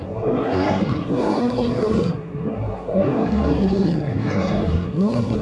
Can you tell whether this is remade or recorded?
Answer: remade